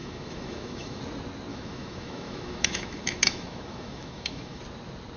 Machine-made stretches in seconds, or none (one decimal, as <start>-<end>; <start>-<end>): 0.0-1.0; 1.5-4.6